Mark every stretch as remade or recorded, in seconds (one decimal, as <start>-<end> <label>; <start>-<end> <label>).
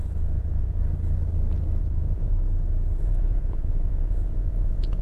0.0-0.8 remade; 0.8-1.8 recorded; 1.8-2.3 remade; 2.3-3.0 recorded; 3.0-5.0 remade